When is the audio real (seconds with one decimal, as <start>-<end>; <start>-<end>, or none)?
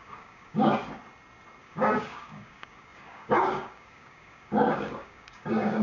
0.8-1.6